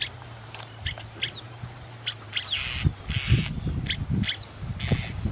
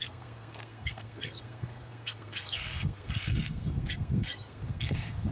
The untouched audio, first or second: first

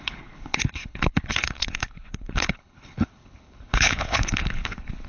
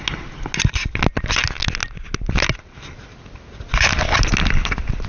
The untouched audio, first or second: second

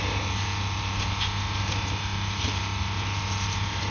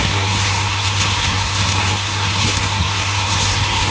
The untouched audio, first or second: first